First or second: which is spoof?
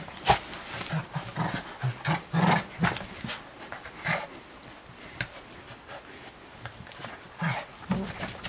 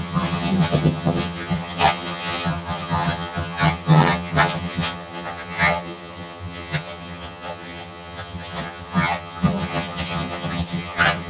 second